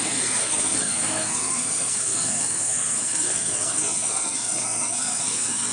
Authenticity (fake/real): fake